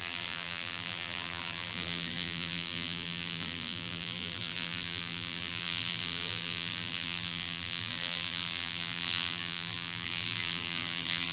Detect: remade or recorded remade